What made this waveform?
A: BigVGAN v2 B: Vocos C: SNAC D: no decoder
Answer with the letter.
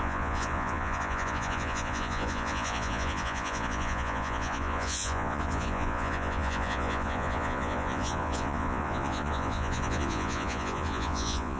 B